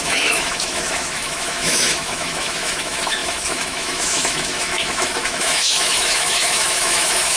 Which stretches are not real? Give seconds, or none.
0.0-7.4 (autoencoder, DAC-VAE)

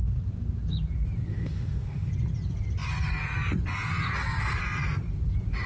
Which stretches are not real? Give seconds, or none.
1.3-2.1 (autoencoder, DAC-VAE)